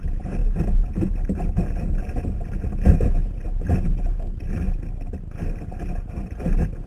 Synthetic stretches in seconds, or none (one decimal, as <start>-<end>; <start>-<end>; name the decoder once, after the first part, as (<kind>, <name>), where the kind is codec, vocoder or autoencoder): none